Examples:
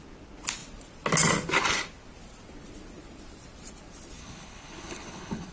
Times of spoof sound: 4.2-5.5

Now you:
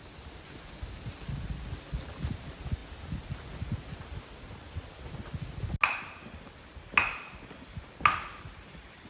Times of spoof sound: none

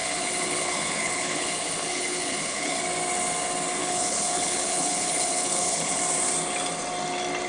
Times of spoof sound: 0.0-2.8; 3.8-6.0

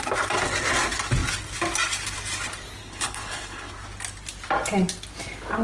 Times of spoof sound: 2.8-3.7

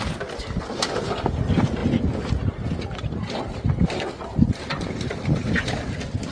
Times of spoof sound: none

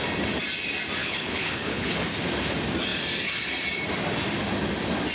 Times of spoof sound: 1.0-2.0

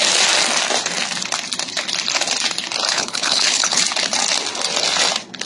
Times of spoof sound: 2.9-3.8